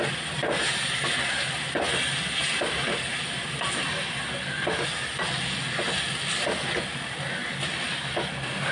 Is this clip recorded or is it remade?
recorded